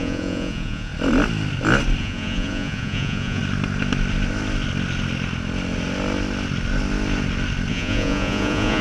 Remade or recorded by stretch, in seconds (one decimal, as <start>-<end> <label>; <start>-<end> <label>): 0.0-0.9 remade; 0.9-2.0 recorded; 2.0-3.4 remade; 3.4-7.7 recorded; 7.7-8.8 remade